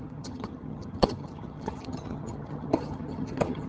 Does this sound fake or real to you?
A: fake